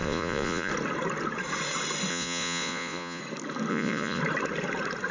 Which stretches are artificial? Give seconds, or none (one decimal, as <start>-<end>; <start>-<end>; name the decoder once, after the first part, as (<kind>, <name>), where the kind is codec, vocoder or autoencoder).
0.0-0.7 (vocoder, Vocos); 2.1-3.2; 3.7-4.2